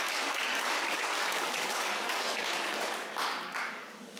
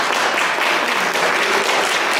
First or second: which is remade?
first